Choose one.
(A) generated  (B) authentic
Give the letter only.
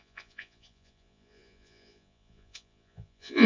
A